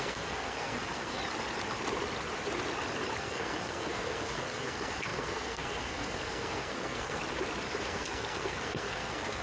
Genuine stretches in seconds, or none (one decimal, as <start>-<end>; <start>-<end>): 1.2-3.2; 7.2-7.8